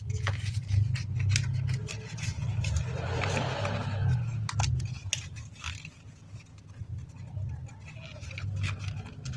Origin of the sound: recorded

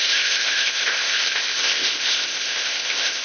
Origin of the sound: remade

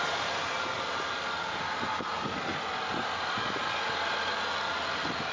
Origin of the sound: recorded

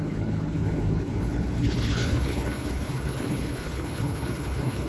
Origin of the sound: remade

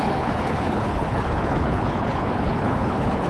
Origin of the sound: remade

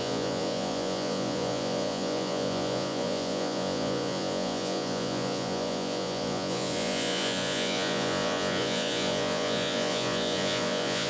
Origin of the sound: remade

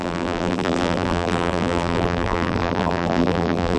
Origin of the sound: remade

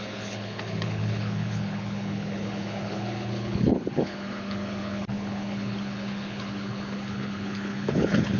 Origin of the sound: remade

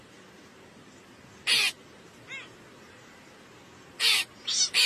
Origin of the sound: recorded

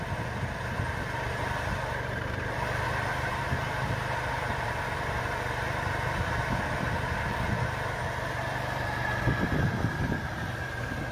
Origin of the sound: remade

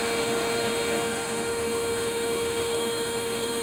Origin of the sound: remade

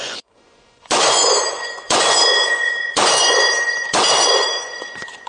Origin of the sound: remade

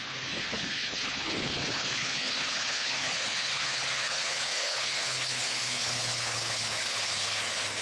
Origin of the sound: remade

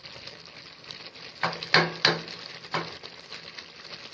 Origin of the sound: recorded